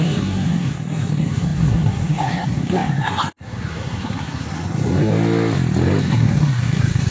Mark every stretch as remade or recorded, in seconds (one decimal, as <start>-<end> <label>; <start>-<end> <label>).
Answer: 0.0-5.1 remade; 5.1-6.0 recorded; 6.0-7.1 remade